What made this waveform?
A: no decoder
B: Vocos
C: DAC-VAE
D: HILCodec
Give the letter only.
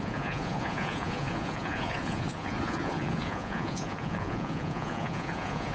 B